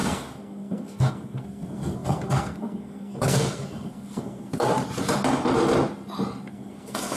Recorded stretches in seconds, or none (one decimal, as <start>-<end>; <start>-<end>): 4.7-6.5